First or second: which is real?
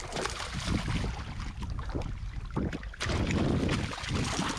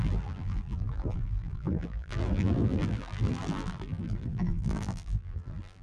first